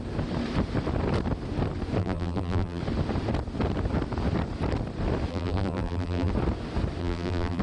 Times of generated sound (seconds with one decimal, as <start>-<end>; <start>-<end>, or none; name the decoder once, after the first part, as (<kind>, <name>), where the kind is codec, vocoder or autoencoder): 2.0-2.8 (vocoder, BigVGAN v2); 5.3-6.3; 7.0-7.6